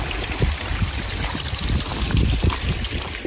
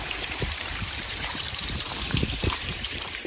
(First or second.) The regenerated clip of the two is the second